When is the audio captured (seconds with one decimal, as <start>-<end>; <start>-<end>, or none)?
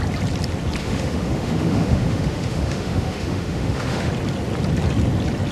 0.0-0.8; 4.1-5.5